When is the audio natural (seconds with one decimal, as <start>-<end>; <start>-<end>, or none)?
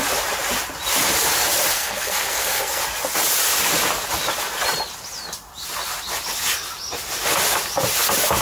0.0-1.7; 2.8-8.4